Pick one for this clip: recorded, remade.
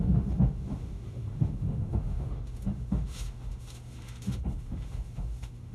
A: remade